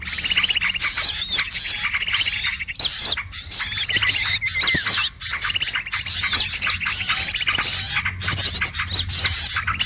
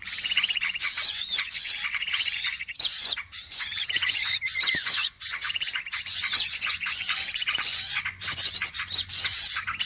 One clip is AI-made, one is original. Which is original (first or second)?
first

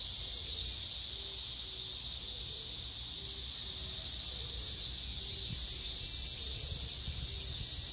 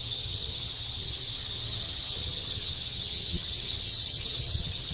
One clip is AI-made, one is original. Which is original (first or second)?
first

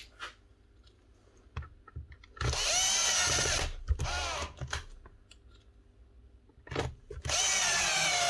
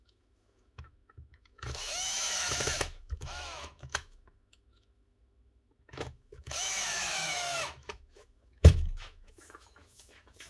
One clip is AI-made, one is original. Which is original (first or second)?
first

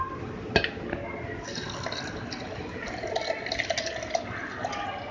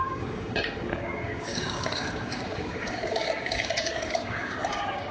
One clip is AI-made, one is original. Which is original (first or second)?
first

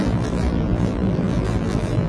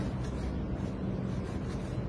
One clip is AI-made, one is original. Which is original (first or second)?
second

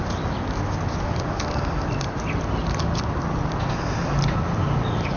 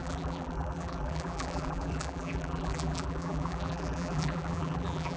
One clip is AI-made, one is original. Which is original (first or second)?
first